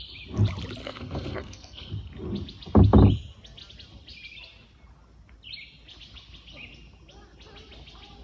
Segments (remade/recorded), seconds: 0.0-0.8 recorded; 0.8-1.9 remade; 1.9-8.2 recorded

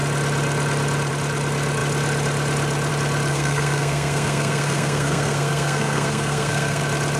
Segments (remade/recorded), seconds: 0.0-3.3 recorded; 3.3-6.8 remade; 6.8-7.2 recorded

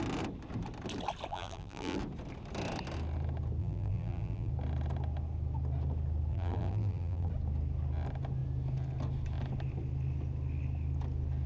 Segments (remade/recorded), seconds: 0.0-1.3 recorded; 1.3-2.0 remade; 2.0-3.6 recorded; 3.6-4.5 remade; 4.5-6.3 recorded; 6.3-7.3 remade; 7.3-11.5 recorded

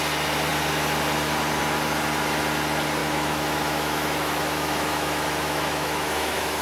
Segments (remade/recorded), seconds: 0.0-3.0 recorded; 3.0-6.6 remade

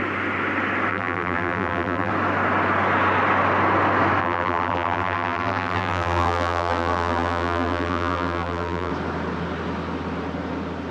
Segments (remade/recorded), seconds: 0.0-0.9 recorded; 0.9-2.1 remade; 2.1-4.2 recorded; 4.2-8.9 remade; 8.9-10.9 recorded

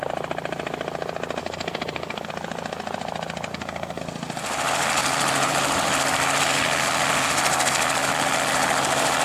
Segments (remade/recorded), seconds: 0.0-1.4 recorded; 1.4-2.3 remade; 2.3-3.5 recorded; 3.5-4.0 remade; 4.0-9.2 recorded